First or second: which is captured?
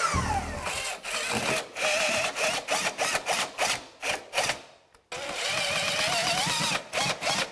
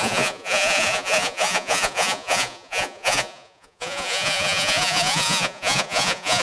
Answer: first